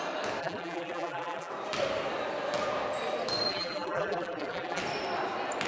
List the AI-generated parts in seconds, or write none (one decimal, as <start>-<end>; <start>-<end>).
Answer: 0.4-1.5; 3.5-4.8